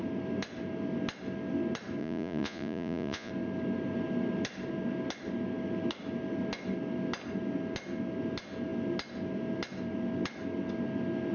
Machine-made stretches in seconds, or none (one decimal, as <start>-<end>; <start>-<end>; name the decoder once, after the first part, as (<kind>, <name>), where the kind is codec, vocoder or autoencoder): 2.0-3.3 (vocoder, Vocos)